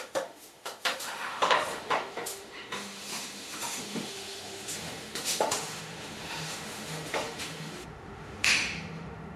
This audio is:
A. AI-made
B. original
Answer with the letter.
A